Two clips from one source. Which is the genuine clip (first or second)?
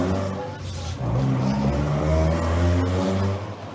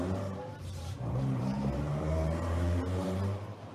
first